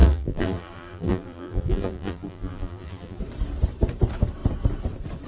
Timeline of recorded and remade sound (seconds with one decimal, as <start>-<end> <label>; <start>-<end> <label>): 0.0-3.2 remade; 3.2-5.3 recorded